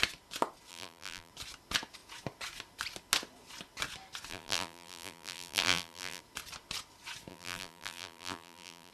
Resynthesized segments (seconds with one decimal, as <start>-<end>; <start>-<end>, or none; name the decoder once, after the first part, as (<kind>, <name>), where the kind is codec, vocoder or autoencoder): 0.7-1.3 (vocoder, BigVGAN v2); 4.3-6.2; 7.3-8.9